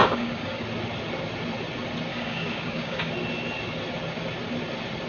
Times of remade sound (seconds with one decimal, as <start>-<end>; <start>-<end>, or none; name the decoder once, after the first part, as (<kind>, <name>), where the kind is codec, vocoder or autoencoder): 0.0-0.6 (codec, DAC); 2.1-3.1